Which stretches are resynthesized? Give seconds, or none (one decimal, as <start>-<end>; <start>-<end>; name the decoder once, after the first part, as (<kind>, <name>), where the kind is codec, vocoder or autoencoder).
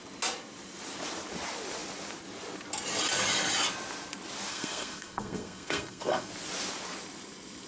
4.5-6.3 (codec, SNAC)